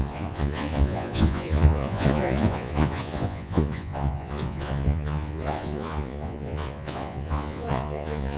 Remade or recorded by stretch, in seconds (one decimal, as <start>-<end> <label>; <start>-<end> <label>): 0.0-8.4 remade